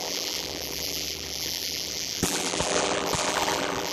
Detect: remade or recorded remade